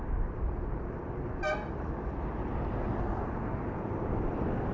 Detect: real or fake real